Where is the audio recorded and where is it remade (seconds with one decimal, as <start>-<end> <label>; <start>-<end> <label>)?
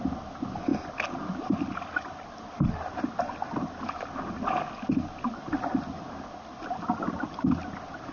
0.0-8.1 recorded